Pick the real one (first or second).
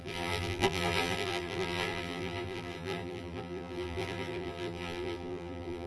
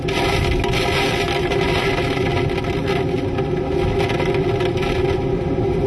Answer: second